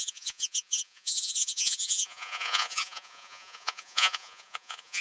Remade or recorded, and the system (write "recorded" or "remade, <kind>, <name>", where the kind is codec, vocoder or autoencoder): remade, vocoder, Vocos